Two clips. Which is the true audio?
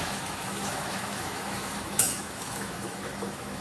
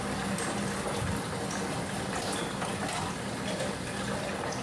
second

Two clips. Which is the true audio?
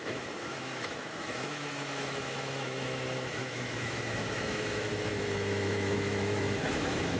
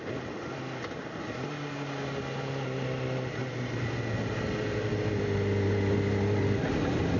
second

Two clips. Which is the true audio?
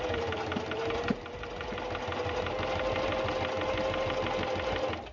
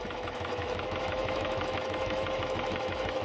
first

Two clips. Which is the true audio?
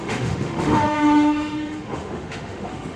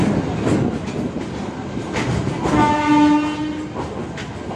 second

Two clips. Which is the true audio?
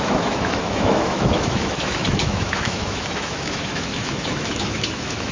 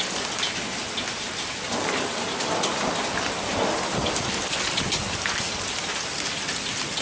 second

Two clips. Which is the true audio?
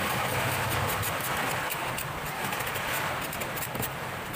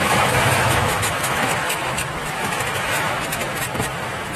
first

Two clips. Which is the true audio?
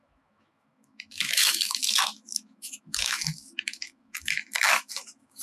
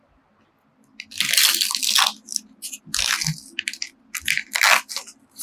second